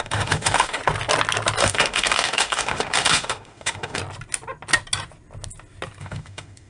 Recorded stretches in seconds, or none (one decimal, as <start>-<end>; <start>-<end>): 0.8-1.6; 4.0-6.0